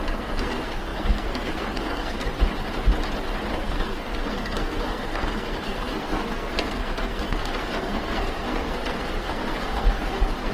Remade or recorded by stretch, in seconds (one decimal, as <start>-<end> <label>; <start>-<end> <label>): 0.0-2.3 remade; 2.3-3.5 recorded; 3.5-10.5 remade